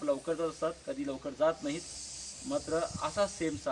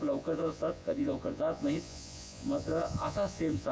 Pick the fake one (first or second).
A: second